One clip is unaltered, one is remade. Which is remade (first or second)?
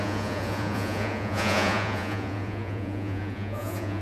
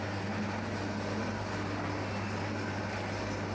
first